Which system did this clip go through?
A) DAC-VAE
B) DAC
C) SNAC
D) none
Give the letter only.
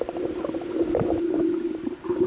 D